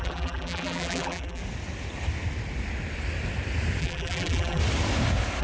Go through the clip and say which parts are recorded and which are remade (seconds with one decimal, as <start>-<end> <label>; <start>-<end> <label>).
0.0-1.4 remade; 1.4-3.8 recorded; 3.8-4.6 remade; 4.6-5.4 recorded